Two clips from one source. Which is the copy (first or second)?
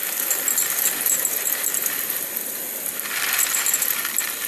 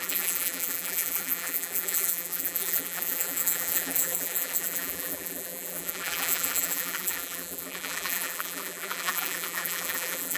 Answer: second